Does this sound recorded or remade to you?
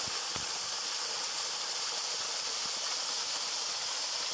recorded